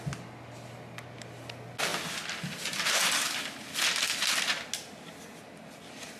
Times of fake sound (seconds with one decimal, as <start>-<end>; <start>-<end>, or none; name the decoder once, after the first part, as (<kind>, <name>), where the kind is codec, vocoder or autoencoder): none